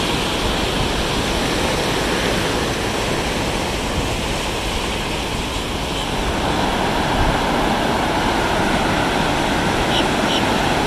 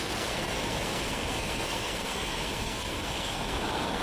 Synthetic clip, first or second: second